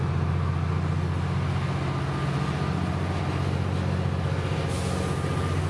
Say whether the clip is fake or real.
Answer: real